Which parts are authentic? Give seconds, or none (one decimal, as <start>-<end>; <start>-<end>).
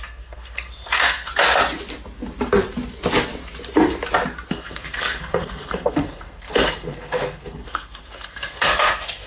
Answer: 1.3-4.5